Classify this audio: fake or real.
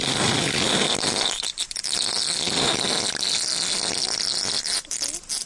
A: real